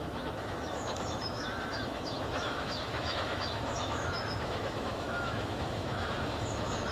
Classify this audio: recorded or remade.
remade